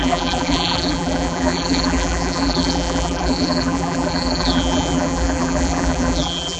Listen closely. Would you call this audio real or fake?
fake